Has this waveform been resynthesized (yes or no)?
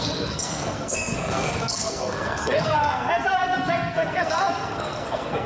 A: yes